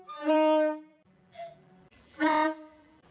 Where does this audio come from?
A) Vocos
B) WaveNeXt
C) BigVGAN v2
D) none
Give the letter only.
C